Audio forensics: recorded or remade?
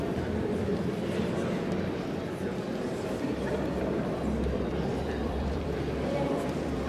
remade